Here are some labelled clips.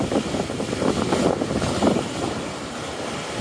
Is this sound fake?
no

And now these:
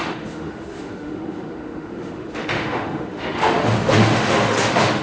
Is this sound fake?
yes